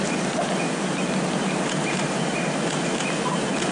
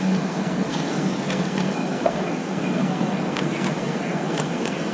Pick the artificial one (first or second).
second